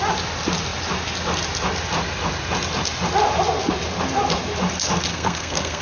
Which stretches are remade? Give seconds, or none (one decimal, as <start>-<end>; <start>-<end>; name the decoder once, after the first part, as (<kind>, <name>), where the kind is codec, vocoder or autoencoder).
5.1-5.8 (codec, SNAC)